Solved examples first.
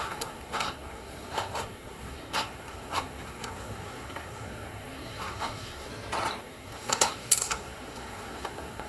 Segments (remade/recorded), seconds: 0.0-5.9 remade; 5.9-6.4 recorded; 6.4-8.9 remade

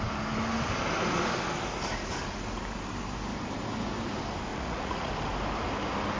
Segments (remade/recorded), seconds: 0.0-4.5 recorded; 4.5-5.1 remade; 5.1-6.2 recorded

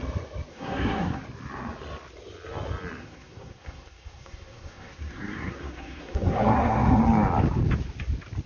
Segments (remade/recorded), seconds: 0.0-0.5 recorded; 0.5-1.2 remade; 1.2-3.0 recorded; 3.0-7.0 remade; 7.0-8.5 recorded

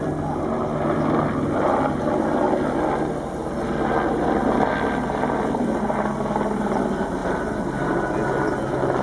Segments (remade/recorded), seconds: 0.0-9.0 recorded

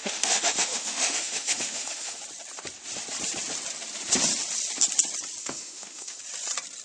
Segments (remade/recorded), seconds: 0.0-2.2 remade; 2.2-5.4 recorded; 5.4-6.2 remade; 6.2-6.8 recorded

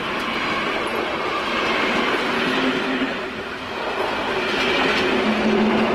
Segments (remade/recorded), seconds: 0.0-5.9 recorded

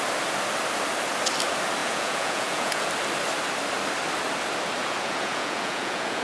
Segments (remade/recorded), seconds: 0.0-1.8 recorded; 1.8-2.9 remade; 2.9-4.8 recorded; 4.8-6.2 remade